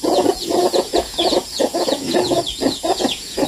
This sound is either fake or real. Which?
fake